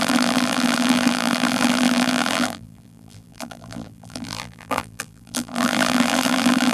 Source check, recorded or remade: remade